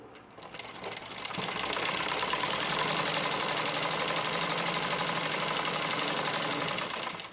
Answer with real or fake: real